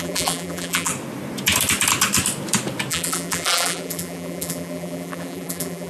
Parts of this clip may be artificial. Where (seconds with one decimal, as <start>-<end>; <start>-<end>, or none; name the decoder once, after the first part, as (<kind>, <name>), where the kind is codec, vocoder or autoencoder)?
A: 0.0-0.9 (vocoder, BigVGAN v2); 2.9-5.9

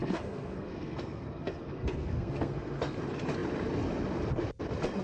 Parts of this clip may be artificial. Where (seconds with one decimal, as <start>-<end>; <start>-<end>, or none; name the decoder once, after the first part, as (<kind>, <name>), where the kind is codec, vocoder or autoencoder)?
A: 0.0-3.0 (codec, SNAC)

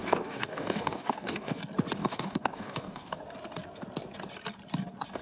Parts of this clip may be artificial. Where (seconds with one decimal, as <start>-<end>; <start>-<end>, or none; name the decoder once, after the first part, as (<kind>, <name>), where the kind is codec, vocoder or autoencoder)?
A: 0.0-1.6 (codec, DAC); 2.0-3.2

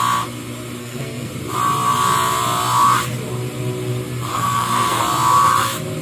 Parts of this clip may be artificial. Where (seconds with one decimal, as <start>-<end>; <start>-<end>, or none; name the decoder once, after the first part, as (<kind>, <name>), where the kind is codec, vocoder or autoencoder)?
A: 0.8-1.3 (codec, SNAC); 4.3-5.0

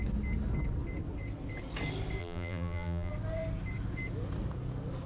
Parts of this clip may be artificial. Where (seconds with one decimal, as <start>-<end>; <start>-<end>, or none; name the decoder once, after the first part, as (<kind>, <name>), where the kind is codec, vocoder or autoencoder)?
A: 2.2-3.1 (vocoder, BigVGAN v2)

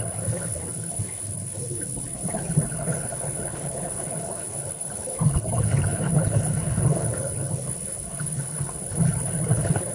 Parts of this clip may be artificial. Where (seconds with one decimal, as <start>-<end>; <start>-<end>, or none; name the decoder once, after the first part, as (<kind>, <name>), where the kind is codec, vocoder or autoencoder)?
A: 0.0-9.9 (codec, HILCodec)